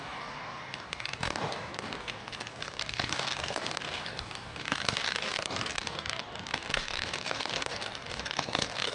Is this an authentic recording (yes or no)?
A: no